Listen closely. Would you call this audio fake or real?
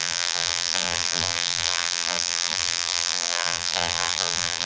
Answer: fake